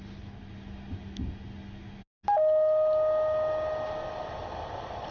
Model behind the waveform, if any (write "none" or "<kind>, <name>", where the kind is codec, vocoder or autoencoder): none